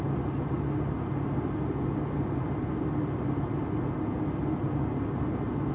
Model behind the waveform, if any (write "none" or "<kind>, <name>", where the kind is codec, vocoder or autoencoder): none